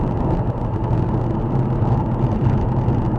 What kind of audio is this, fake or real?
real